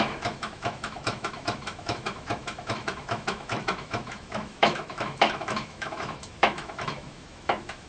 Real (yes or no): no